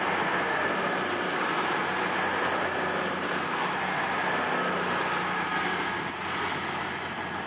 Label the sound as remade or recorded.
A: recorded